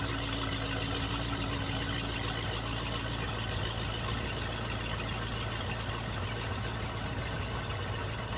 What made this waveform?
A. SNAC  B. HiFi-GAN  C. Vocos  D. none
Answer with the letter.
D